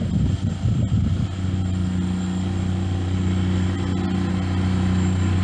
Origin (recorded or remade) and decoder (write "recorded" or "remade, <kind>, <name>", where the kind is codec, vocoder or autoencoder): recorded